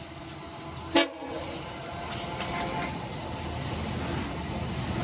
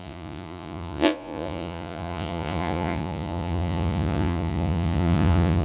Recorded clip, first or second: first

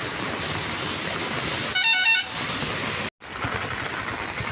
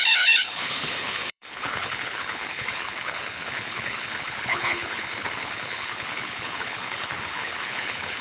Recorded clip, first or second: first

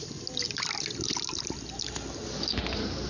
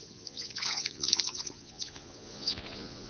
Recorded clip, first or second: first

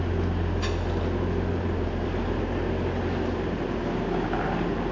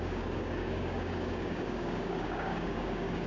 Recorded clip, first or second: first